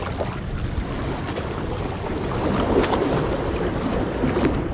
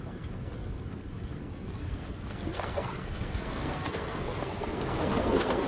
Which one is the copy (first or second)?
second